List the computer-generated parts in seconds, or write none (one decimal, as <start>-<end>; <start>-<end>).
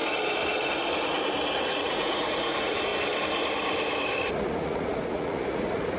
1.6-2.9; 4.3-6.0